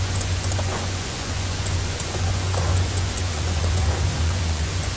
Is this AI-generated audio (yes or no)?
yes